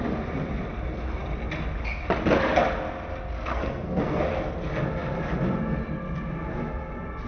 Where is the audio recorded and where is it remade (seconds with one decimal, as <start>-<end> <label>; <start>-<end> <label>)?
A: 0.0-3.5 recorded; 3.5-4.2 remade; 4.2-7.3 recorded